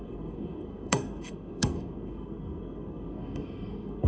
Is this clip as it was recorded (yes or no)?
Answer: no